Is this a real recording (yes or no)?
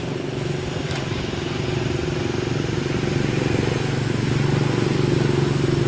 yes